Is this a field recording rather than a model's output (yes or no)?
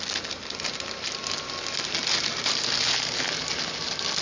yes